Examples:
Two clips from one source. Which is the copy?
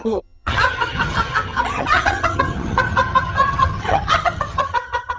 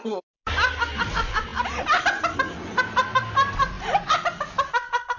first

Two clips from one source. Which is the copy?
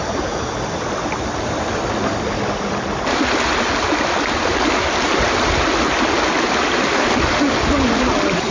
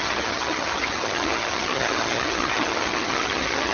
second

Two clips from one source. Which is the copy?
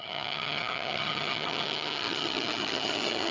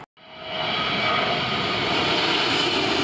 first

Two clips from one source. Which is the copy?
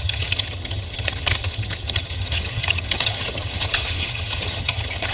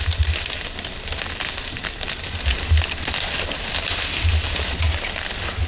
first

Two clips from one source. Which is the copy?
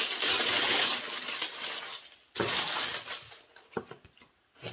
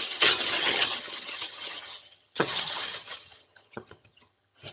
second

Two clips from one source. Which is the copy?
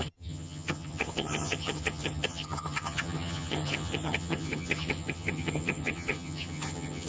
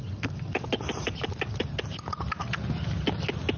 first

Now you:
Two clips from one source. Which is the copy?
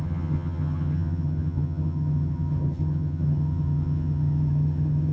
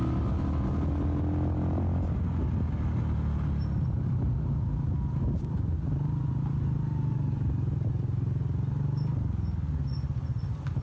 first